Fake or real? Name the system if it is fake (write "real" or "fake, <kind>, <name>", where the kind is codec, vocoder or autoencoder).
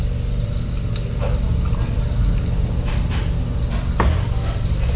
real